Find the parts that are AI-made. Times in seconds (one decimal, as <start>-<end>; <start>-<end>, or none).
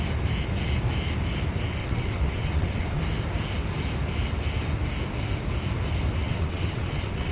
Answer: 1.8-3.0; 6.2-7.3